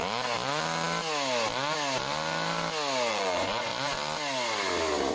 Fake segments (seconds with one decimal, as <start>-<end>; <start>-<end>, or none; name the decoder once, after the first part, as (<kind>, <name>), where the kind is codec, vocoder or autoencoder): 3.1-3.7 (vocoder, Vocos)